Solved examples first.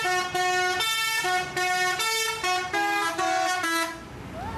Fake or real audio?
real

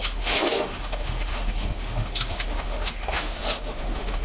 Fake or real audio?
fake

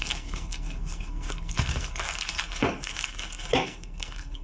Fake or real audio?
fake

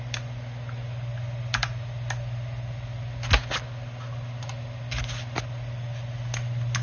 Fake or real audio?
real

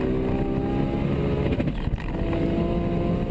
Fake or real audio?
real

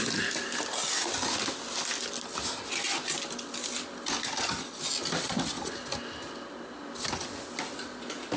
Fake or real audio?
real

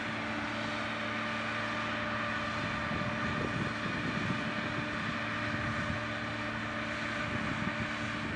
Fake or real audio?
real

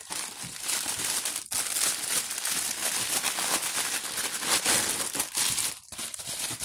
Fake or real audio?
real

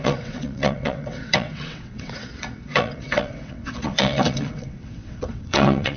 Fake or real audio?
fake